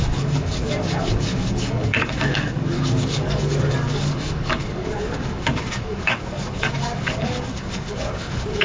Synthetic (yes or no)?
yes